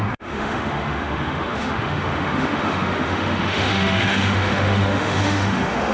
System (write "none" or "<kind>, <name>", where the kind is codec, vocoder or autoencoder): autoencoder, DAC-VAE